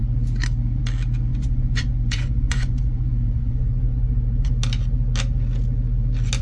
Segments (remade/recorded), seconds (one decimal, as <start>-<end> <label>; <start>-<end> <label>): 0.0-1.3 recorded; 1.3-4.5 remade; 4.5-6.4 recorded